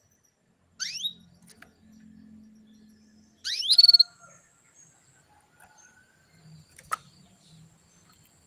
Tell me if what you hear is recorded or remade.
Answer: recorded